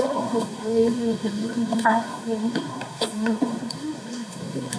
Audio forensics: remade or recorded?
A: remade